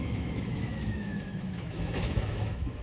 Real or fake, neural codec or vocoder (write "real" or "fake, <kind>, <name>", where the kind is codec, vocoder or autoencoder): fake, autoencoder, DAC-VAE